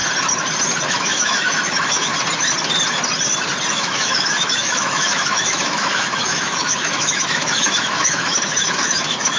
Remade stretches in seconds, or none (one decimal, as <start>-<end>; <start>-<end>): 0.9-2.1; 3.7-9.4